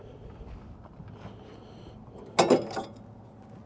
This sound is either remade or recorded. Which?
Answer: recorded